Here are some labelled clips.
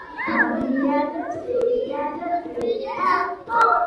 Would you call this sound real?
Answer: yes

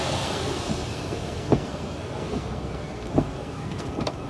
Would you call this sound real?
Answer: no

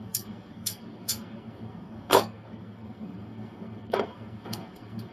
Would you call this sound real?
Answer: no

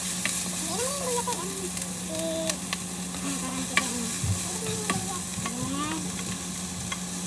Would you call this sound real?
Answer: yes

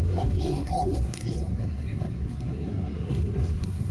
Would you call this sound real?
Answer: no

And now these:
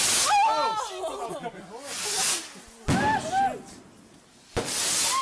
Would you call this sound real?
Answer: yes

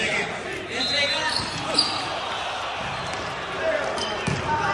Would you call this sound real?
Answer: yes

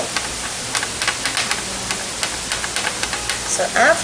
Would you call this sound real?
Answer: yes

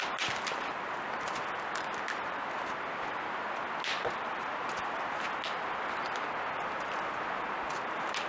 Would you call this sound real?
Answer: yes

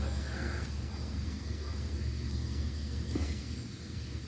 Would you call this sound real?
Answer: no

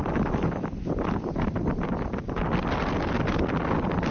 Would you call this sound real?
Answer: yes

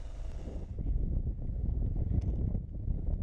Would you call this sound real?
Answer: yes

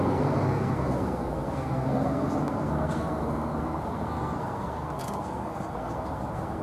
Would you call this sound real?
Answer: no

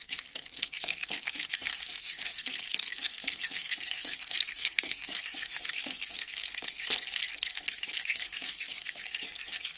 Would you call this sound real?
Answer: no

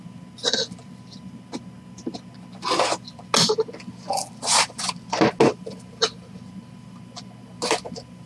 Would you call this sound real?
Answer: yes